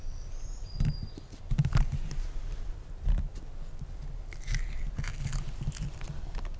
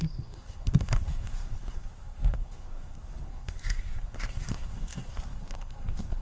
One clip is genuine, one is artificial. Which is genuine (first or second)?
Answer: first